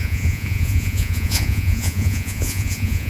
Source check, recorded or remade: remade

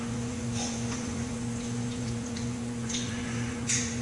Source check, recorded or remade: remade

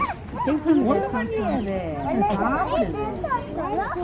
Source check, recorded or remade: recorded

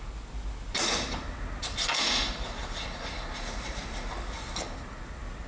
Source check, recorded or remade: recorded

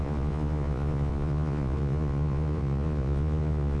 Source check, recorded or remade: remade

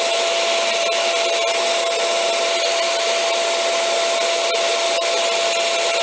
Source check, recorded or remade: recorded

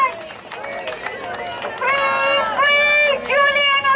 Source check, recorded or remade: recorded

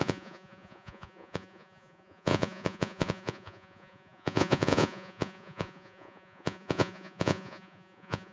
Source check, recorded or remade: remade